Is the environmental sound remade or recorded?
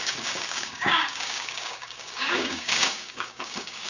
remade